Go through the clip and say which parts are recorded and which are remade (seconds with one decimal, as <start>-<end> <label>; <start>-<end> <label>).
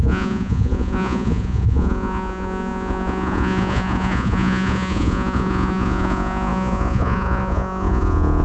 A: 0.0-8.4 remade